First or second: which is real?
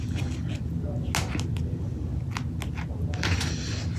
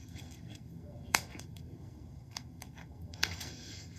first